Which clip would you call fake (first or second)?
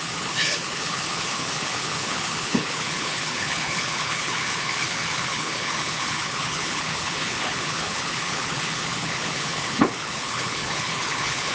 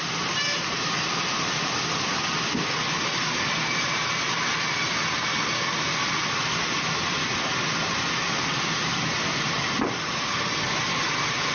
first